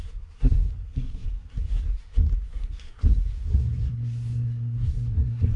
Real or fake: fake